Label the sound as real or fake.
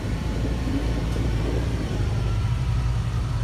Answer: fake